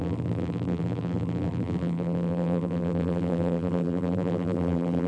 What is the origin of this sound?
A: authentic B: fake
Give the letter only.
B